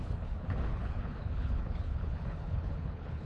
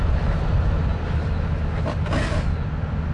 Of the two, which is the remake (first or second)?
first